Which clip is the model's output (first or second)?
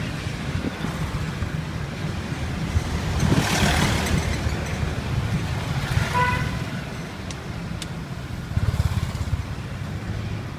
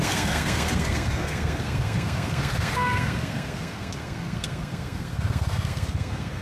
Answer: second